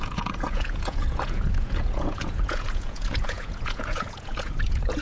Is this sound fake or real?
fake